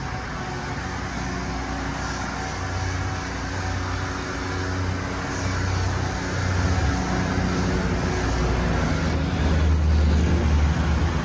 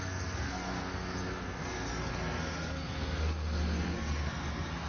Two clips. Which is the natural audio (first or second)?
first